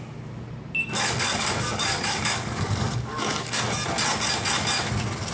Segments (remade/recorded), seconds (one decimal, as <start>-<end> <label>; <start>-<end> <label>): 0.0-0.8 recorded; 0.8-3.7 remade; 3.7-5.3 recorded